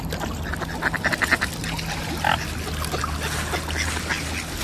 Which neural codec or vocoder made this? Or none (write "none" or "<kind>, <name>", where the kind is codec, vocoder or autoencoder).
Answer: none